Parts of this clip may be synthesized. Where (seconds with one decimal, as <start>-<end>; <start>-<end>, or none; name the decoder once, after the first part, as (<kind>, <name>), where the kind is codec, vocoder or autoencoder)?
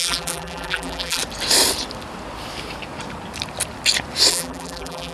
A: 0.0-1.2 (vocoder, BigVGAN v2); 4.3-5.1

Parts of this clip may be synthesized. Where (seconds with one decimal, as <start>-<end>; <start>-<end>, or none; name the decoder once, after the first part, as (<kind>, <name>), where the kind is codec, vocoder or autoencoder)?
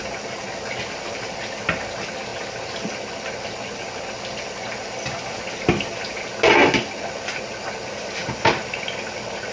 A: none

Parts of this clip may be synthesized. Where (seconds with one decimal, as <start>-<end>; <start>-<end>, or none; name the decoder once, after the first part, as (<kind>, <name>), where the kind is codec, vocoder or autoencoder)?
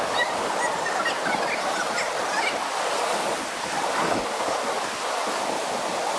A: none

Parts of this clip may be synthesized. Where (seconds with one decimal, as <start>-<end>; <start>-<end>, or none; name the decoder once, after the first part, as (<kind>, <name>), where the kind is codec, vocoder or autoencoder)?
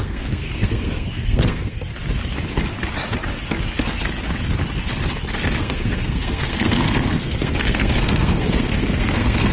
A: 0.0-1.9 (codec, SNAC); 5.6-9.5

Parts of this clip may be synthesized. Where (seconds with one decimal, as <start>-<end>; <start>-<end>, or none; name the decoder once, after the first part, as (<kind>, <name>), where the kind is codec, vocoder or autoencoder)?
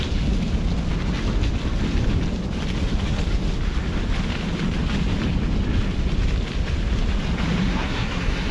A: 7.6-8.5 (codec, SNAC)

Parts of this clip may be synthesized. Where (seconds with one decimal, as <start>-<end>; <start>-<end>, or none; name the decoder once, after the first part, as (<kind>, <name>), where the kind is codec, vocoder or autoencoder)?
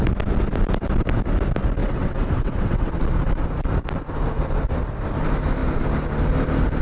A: 1.8-2.9 (vocoder, WaveNeXt)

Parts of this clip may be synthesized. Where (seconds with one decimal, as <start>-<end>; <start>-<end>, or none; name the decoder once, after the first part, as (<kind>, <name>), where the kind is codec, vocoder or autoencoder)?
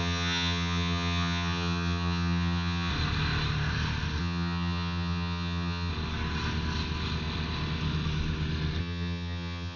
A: 0.0-2.9 (vocoder, HiFi-GAN); 4.2-5.9; 8.8-9.8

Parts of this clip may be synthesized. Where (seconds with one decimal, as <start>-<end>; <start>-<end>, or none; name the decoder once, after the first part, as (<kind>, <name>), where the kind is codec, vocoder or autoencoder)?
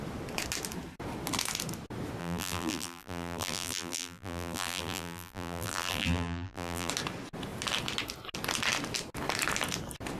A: 2.2-6.9 (vocoder, BigVGAN v2)